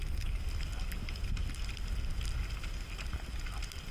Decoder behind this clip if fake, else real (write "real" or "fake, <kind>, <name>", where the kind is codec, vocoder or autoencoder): real